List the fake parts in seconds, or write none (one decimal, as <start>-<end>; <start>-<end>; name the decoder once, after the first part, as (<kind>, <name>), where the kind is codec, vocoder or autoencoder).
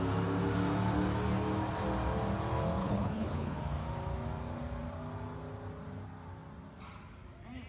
2.8-3.6 (codec, HILCodec)